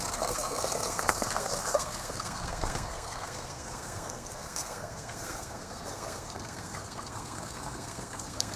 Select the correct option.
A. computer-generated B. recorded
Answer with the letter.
A